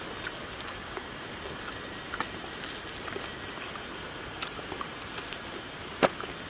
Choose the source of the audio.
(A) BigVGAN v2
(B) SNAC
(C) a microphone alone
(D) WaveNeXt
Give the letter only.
C